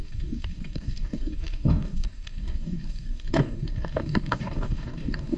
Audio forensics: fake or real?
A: fake